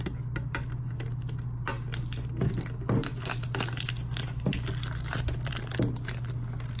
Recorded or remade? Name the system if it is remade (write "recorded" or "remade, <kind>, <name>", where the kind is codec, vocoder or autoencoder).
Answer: recorded